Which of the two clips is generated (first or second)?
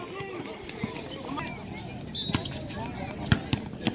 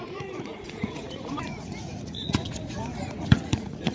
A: second